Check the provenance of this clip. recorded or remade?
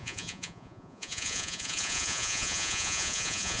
remade